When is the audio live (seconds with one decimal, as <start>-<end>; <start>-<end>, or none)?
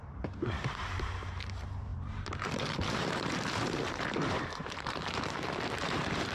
none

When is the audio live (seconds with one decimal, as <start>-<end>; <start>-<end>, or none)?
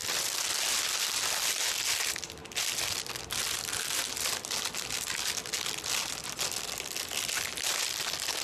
0.0-8.4